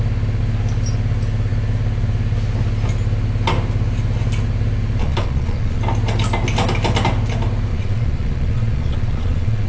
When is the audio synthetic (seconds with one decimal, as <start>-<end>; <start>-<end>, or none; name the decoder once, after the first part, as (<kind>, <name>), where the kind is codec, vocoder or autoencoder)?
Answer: 5.0-5.8 (vocoder, Vocos); 7.7-9.7